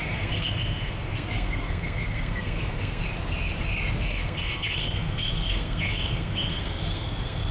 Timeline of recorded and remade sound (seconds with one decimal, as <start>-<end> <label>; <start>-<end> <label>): 0.0-3.0 remade; 3.0-4.0 recorded; 4.0-7.5 remade